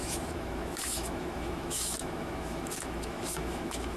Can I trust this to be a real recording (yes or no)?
no